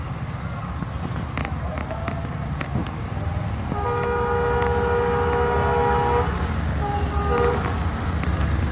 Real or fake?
real